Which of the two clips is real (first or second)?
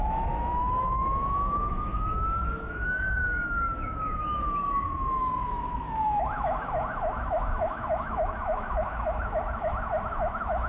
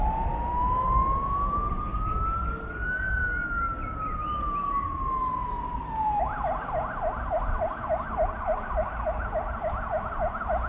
second